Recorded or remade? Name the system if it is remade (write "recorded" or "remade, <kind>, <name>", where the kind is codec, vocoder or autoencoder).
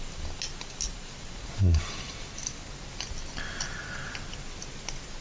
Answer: recorded